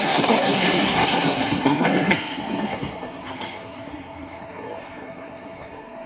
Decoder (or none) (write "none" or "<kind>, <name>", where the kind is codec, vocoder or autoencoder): codec, SNAC